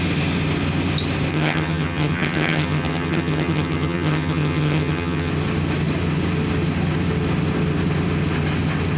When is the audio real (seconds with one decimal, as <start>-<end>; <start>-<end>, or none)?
0.0-1.3; 5.3-9.0